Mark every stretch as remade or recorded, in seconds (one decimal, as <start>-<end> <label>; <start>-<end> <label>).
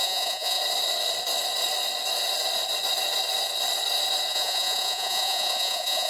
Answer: 0.0-0.6 remade; 0.6-4.3 recorded; 4.3-6.1 remade